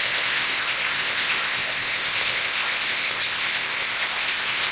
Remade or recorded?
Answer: remade